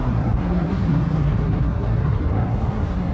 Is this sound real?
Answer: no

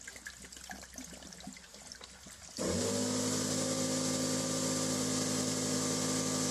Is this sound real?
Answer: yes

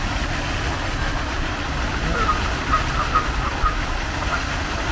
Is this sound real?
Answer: yes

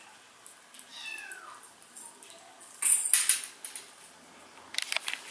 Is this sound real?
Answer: yes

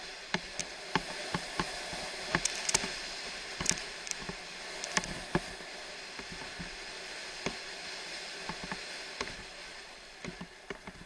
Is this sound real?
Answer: yes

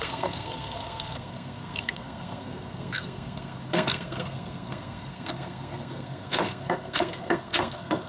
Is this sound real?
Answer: no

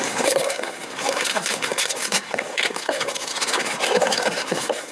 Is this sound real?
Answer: no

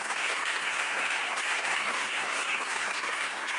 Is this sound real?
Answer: no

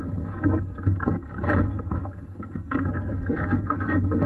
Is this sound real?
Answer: no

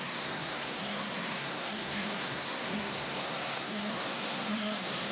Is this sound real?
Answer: no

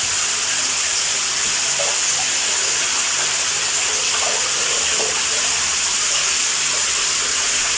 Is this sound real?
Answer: yes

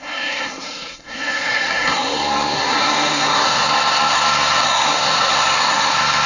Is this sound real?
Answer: no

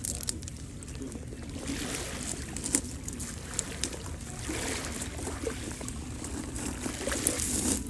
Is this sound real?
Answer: yes